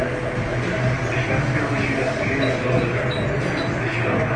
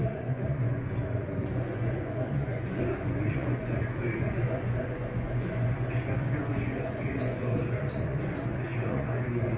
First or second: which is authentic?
first